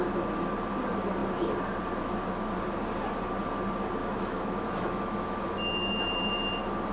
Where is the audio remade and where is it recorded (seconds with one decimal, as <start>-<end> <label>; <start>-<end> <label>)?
0.0-4.0 recorded; 4.0-6.4 remade; 6.4-6.9 recorded